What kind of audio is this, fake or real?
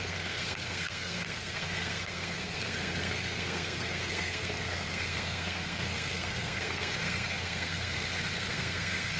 fake